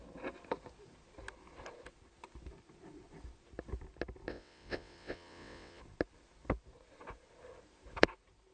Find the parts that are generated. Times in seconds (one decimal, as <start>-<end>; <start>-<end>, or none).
4.3-5.8